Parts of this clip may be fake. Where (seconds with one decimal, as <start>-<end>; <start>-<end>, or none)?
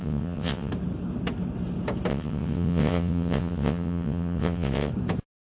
0.0-0.7; 2.1-4.9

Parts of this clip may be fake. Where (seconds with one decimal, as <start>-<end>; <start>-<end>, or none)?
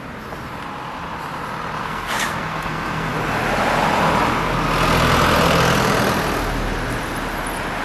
1.8-3.1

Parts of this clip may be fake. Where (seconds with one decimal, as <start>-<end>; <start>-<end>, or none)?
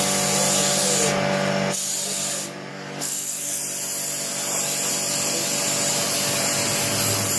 2.7-3.6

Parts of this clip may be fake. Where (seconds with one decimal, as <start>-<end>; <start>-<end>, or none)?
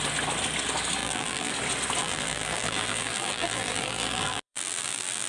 1.0-1.5; 2.0-5.3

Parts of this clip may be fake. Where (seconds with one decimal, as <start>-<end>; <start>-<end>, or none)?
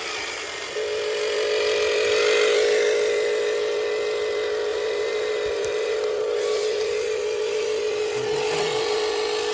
4.7-9.0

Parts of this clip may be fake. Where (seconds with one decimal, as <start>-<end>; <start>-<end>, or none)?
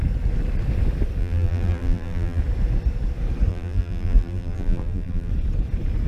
1.2-2.4; 3.5-5.3